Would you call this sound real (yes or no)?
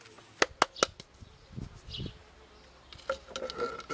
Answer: yes